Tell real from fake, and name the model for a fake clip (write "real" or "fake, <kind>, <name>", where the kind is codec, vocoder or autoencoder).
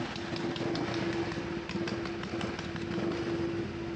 real